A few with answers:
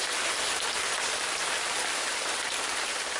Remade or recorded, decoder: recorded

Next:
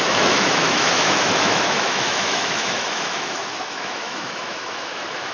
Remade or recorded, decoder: remade, autoencoder, DAC-VAE